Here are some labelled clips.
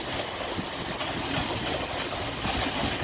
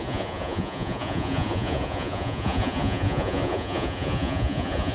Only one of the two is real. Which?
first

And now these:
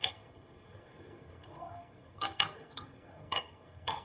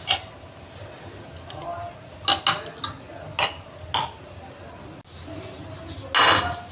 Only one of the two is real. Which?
second